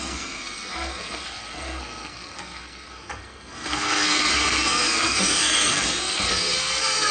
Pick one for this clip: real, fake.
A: fake